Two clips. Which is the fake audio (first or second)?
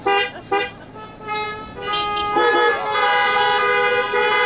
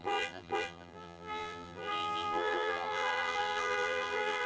second